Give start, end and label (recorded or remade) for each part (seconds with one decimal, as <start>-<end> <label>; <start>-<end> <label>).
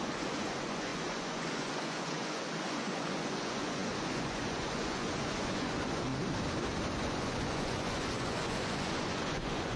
0.0-6.1 remade; 6.1-6.9 recorded; 6.9-9.8 remade